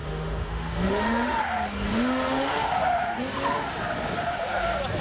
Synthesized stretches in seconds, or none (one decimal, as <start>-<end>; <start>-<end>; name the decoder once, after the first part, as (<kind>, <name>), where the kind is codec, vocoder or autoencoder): 0.0-1.4 (autoencoder, DAC-VAE); 1.9-2.7